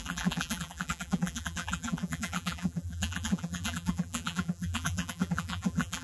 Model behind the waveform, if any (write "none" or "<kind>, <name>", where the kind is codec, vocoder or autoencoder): vocoder, BigVGAN v2